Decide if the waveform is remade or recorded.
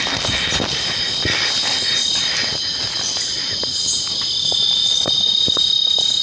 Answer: recorded